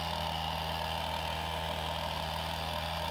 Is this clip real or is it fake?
real